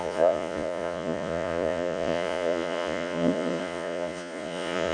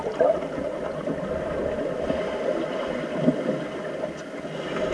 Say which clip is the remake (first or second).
first